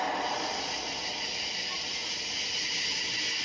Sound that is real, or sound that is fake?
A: real